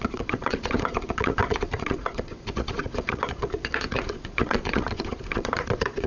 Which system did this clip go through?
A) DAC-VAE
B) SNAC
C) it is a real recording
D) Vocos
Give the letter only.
D